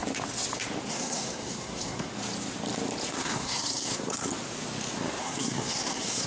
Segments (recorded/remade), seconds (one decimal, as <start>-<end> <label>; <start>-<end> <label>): 0.0-0.9 recorded; 0.9-2.1 remade; 2.1-3.1 recorded; 3.1-4.3 remade; 4.3-5.2 recorded; 5.2-6.3 remade

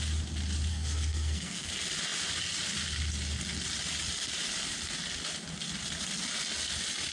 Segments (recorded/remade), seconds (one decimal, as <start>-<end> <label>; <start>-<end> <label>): 0.0-0.7 recorded; 0.7-1.7 remade; 1.7-7.1 recorded

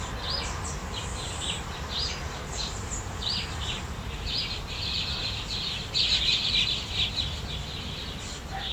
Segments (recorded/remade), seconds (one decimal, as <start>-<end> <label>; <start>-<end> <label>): 0.0-0.8 recorded; 0.8-4.4 remade; 4.4-8.7 recorded

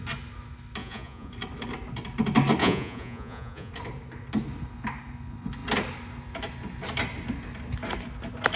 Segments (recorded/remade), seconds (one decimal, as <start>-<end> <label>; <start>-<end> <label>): 0.0-0.8 recorded; 0.8-1.3 remade; 1.3-2.6 recorded; 2.6-3.7 remade; 3.7-8.6 recorded